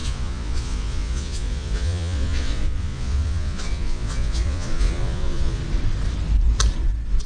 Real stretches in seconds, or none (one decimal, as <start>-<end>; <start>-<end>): 5.6-7.3